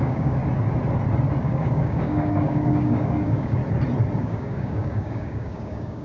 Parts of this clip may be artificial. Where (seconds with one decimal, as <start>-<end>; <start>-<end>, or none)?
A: 0.0-0.4; 1.4-3.6; 4.2-6.0